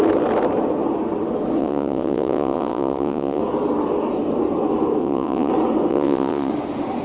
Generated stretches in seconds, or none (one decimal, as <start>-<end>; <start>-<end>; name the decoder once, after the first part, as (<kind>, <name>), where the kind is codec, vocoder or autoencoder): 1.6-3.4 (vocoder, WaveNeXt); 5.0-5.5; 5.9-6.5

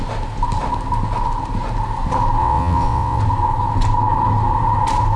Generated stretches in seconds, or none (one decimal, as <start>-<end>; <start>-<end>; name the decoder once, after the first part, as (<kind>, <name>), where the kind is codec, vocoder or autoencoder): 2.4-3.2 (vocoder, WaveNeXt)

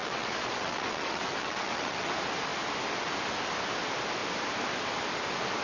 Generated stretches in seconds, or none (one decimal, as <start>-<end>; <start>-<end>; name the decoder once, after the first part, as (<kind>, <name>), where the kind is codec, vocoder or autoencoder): 0.0-2.1 (vocoder, WaveNeXt)